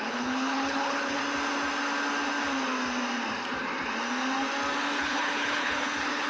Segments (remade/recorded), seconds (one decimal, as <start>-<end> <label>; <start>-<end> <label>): 0.0-1.2 remade; 1.2-5.0 recorded; 5.0-6.3 remade